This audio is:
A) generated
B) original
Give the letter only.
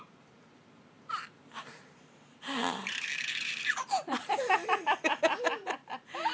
A